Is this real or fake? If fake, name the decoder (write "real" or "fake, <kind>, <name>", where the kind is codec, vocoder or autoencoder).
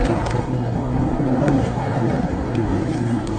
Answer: fake, codec, SNAC